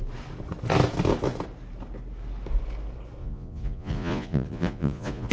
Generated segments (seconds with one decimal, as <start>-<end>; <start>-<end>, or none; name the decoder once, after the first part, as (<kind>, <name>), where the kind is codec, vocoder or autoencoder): 3.2-5.3 (vocoder, Vocos)